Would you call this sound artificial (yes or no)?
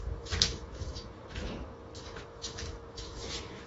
yes